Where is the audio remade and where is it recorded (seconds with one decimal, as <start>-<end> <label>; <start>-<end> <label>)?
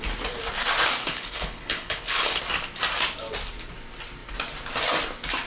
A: 0.0-1.0 recorded; 1.0-2.4 remade; 2.4-5.5 recorded